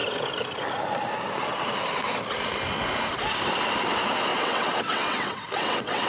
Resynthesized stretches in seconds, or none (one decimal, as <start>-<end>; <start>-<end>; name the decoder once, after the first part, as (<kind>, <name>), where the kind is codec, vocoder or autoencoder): 4.3-6.1 (vocoder, WaveNeXt)